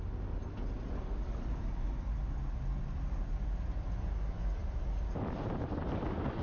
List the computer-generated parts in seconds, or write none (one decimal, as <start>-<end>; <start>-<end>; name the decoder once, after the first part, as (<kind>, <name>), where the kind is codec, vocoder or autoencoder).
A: none